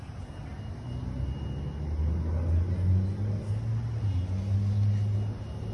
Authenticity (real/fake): real